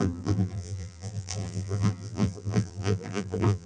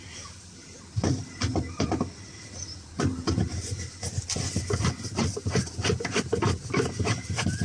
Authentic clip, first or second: second